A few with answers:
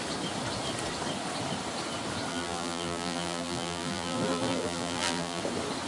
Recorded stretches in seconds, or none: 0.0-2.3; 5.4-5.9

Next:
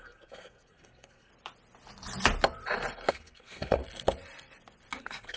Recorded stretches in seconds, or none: 1.3-3.1; 3.8-5.0

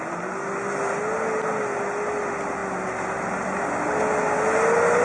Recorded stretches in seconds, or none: 0.0-5.0

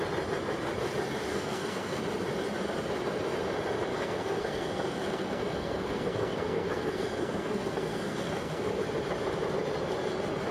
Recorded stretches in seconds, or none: 0.0-1.3; 2.0-3.9; 8.7-10.5

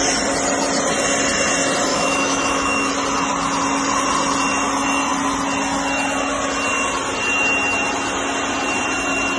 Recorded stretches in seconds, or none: 0.0-1.9; 2.9-9.4